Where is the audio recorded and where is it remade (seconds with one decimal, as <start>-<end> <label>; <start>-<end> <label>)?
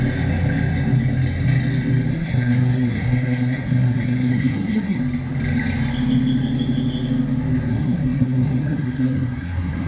0.0-2.1 recorded; 2.1-5.0 remade; 5.0-7.7 recorded; 7.7-9.9 remade